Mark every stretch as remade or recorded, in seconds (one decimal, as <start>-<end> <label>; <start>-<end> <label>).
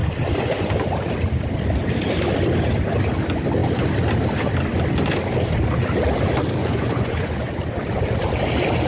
0.0-6.6 recorded; 6.6-7.5 remade; 7.5-8.9 recorded